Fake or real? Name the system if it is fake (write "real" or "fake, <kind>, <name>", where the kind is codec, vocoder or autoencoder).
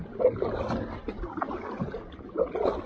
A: real